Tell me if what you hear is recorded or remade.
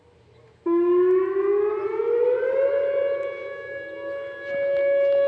recorded